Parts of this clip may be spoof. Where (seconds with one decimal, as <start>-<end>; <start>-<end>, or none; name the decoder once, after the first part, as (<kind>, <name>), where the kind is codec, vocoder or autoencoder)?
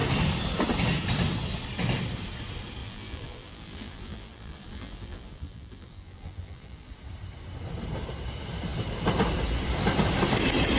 2.8-6.9 (vocoder, BigVGAN v2)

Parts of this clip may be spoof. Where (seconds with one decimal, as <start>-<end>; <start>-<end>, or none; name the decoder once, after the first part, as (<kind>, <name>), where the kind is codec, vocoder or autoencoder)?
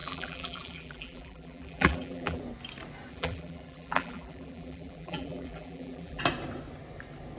0.0-2.4 (vocoder, BigVGAN v2); 3.1-6.2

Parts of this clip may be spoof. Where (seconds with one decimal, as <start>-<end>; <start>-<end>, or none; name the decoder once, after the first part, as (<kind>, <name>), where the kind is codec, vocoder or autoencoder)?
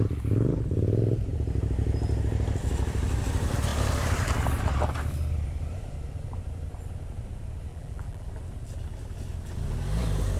7.7-8.3 (vocoder, BigVGAN v2)